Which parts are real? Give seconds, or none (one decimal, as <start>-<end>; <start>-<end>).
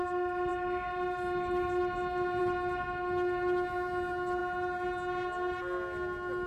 0.0-6.5